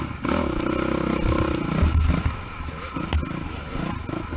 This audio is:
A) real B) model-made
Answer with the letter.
A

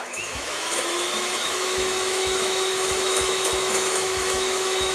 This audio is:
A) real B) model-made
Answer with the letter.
B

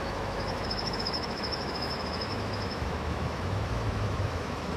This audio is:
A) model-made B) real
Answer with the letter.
A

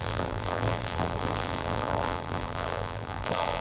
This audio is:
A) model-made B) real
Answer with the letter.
A